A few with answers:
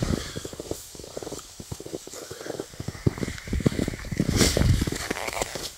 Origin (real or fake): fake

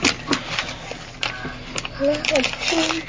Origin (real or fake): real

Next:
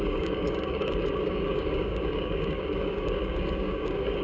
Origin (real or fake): fake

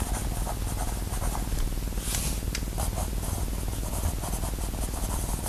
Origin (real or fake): real